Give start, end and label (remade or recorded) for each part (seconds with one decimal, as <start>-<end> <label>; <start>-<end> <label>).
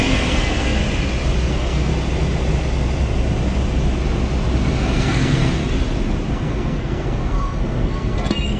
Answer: 0.0-0.8 remade; 0.8-1.5 recorded; 1.5-1.9 remade; 1.9-4.8 recorded; 4.8-5.6 remade; 5.6-6.3 recorded; 6.3-8.6 remade